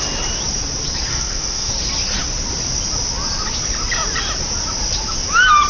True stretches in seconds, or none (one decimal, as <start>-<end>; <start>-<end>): 0.0-1.1; 1.7-5.7